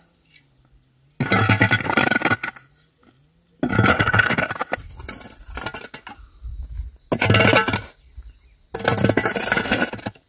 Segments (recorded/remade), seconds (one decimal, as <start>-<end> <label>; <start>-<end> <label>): 0.0-3.9 recorded; 3.9-4.5 remade; 4.5-10.3 recorded